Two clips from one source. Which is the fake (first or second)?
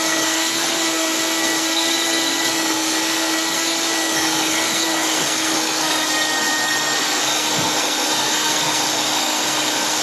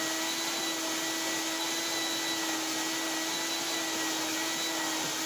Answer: first